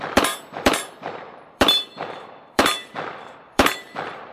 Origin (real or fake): fake